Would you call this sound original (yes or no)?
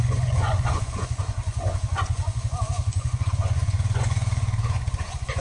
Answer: no